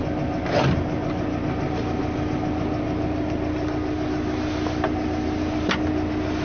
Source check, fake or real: real